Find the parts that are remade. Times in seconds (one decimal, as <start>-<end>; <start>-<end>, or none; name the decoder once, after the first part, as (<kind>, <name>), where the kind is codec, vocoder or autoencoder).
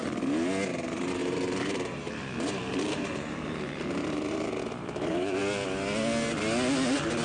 1.2-5.4 (vocoder, BigVGAN v2)